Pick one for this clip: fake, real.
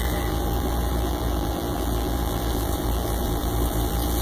fake